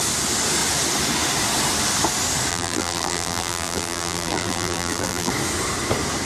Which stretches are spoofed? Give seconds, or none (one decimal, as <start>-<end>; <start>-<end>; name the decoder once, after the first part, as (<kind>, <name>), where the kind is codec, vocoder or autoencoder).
2.5-5.3 (vocoder, BigVGAN v2)